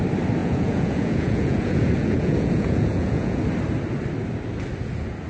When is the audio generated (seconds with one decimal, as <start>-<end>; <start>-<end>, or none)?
0.4-3.4